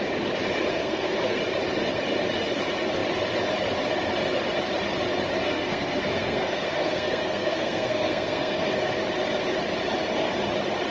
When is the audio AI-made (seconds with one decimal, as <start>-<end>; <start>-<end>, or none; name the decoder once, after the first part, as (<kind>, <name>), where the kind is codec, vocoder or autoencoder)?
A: 0.7-1.4 (codec, SNAC); 5.4-8.7